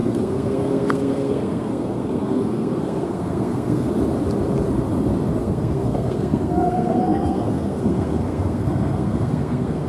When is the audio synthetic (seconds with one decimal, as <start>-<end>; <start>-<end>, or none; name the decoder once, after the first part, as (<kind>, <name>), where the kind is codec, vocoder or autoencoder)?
0.0-3.9 (codec, SNAC); 5.4-9.9